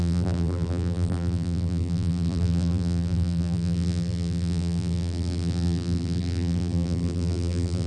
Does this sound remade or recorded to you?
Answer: remade